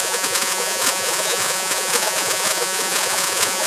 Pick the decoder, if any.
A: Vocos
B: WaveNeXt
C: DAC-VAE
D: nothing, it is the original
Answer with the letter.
A